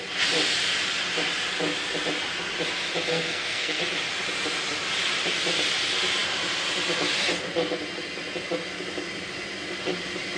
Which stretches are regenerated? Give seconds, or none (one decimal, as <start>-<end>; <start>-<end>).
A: 3.1-3.8